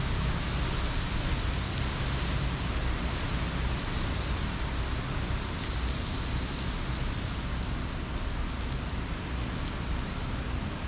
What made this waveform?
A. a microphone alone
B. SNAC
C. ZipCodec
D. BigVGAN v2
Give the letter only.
A